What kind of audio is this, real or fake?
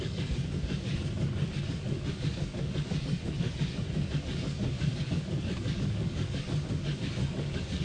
fake